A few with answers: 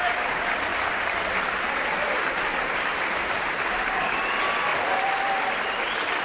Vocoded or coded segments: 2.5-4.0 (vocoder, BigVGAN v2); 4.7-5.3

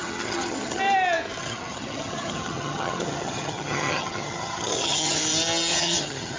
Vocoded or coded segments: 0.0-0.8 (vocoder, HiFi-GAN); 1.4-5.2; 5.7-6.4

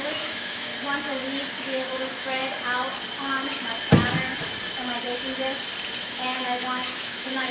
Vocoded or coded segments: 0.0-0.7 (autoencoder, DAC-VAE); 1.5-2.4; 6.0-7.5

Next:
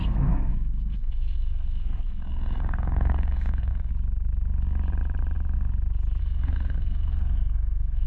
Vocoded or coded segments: 0.0-3.9 (codec, SNAC); 6.2-8.1

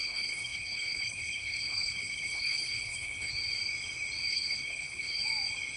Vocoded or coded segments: 0.0-3.3 (codec, HILCodec); 4.3-5.2